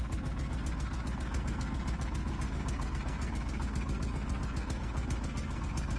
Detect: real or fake fake